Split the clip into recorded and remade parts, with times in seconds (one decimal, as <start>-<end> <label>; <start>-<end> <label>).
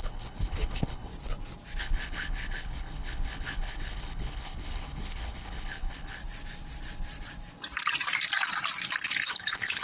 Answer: 0.0-1.1 remade; 1.1-1.8 recorded; 1.8-6.2 remade; 6.2-9.3 recorded; 9.3-9.8 remade